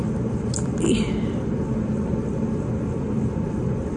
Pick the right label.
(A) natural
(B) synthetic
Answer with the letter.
A